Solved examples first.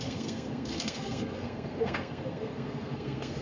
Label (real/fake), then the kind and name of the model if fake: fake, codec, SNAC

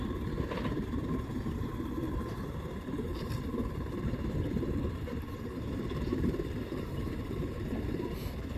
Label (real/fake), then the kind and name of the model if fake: fake, vocoder, BigVGAN v2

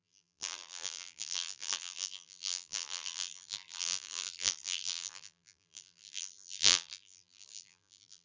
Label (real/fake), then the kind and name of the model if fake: fake, vocoder, BigVGAN v2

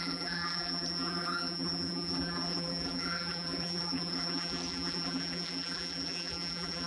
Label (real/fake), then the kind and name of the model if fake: fake, vocoder, BigVGAN v2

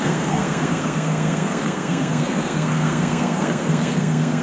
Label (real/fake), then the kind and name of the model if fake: fake, codec, SNAC